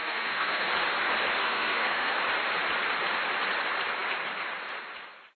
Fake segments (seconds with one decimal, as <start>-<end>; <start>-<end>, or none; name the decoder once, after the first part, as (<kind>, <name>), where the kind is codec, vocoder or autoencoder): 0.0-0.7 (codec, SNAC); 1.4-2.1